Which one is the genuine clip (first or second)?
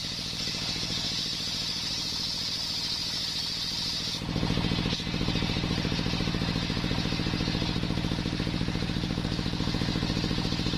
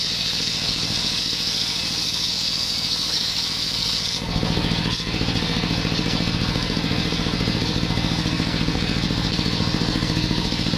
first